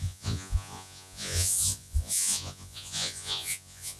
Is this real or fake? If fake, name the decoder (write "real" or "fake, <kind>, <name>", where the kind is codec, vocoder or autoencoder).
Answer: fake, vocoder, Vocos